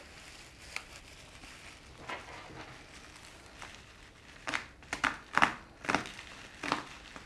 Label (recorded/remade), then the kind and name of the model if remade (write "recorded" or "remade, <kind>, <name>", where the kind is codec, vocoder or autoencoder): recorded